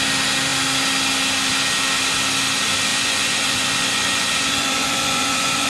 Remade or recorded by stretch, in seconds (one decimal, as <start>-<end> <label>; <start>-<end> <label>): 0.0-2.9 recorded; 2.9-5.7 remade